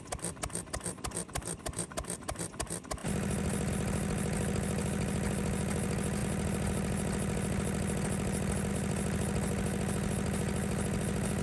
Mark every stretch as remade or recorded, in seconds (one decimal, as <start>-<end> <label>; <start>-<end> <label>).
0.0-11.4 recorded